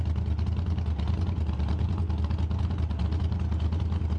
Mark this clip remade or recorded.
recorded